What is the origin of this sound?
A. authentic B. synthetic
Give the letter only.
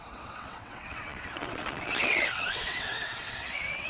B